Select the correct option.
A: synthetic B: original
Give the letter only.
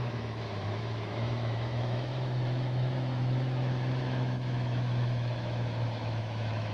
A